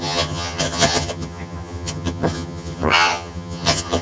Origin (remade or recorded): remade